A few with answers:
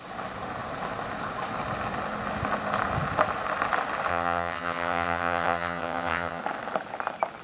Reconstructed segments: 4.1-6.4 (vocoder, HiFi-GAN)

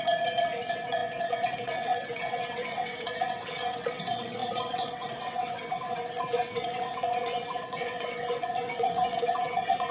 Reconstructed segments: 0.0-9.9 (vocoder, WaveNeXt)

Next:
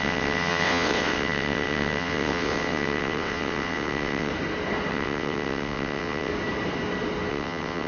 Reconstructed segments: 0.0-4.3 (vocoder, WaveNeXt); 4.9-6.3; 7.3-7.9